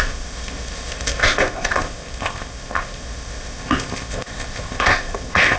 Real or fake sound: fake